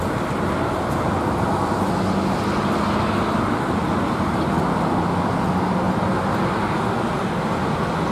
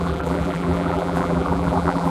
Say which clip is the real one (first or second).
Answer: first